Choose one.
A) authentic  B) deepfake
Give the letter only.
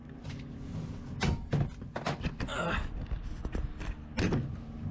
A